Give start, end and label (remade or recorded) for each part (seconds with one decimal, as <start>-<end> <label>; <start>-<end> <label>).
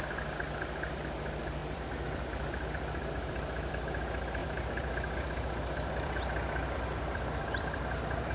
0.0-1.6 recorded; 1.6-3.7 remade; 3.7-4.4 recorded; 4.4-7.8 remade; 7.8-8.3 recorded